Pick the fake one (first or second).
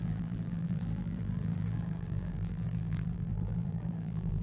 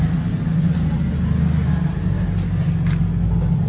first